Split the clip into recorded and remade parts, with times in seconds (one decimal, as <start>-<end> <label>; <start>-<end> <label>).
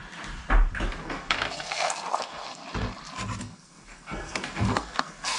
0.0-1.0 recorded; 1.0-2.6 remade; 2.6-3.4 recorded; 3.4-5.4 remade